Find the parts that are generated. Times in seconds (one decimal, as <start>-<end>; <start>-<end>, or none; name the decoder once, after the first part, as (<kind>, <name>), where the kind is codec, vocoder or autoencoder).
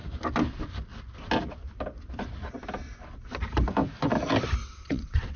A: 4.6-5.4 (vocoder, WaveNeXt)